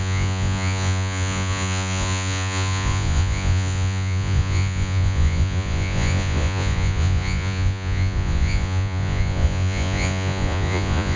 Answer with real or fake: fake